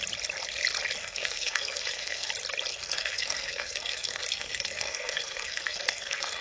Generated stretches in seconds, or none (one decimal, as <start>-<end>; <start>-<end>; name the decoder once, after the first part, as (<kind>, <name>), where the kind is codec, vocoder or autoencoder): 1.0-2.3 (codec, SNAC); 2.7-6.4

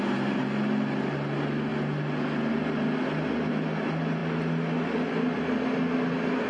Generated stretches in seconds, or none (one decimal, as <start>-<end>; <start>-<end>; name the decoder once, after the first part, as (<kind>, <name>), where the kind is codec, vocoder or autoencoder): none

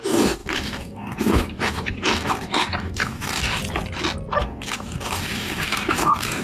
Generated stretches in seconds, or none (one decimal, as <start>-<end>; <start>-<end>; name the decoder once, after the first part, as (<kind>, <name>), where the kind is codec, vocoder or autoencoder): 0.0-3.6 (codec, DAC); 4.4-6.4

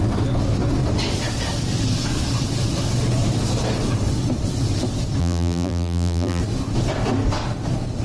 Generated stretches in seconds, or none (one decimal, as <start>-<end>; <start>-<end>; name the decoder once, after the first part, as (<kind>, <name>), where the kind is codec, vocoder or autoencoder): 5.2-6.4 (vocoder, BigVGAN v2)

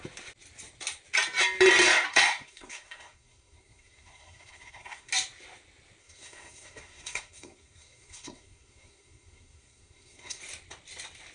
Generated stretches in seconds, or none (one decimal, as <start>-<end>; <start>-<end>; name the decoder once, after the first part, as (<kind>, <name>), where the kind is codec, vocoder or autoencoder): 2.1-5.1 (codec, SNAC); 6.0-10.4

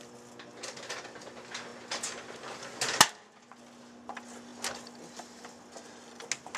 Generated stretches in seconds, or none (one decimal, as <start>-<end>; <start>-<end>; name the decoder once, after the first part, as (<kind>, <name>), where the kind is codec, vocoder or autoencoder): none

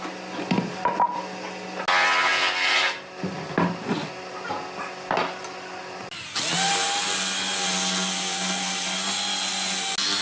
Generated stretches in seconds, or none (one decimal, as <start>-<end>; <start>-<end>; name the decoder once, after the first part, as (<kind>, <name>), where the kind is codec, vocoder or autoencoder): none